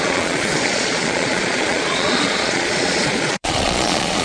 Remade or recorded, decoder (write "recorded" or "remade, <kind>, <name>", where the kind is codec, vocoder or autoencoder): remade, vocoder, Vocos